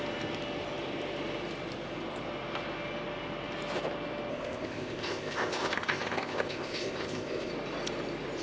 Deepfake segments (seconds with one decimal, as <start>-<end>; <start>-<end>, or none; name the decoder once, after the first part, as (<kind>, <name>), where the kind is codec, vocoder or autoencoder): 4.3-7.5 (codec, ZipCodec)

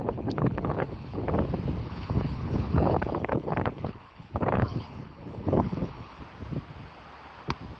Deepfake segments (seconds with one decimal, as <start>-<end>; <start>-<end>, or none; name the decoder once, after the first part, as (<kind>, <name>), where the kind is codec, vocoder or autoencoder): 0.0-1.2 (codec, HILCodec); 1.8-6.2

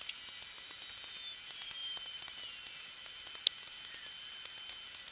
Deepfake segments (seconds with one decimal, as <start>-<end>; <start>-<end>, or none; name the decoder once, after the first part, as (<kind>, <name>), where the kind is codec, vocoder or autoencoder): none

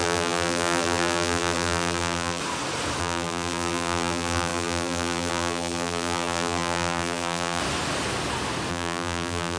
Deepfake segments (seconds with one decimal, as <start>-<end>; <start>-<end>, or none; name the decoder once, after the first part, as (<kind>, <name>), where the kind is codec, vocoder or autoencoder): 0.0-2.4 (vocoder, BigVGAN v2); 3.0-7.6; 8.7-9.6